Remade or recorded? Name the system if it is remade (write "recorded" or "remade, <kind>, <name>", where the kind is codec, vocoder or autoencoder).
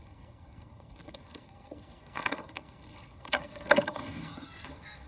remade, codec, SNAC